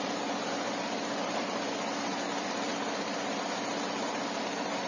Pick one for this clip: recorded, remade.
recorded